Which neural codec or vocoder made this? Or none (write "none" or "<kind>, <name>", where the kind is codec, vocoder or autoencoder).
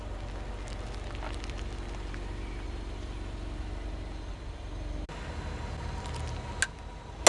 none